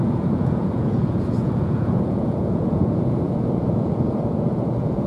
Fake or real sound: fake